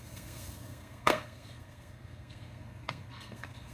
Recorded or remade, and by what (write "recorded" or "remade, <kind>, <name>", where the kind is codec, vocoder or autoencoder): remade, codec, SNAC